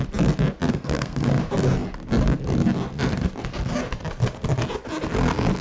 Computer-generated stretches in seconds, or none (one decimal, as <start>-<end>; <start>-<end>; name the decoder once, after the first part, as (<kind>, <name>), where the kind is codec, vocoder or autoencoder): 0.7-1.3 (codec, SNAC)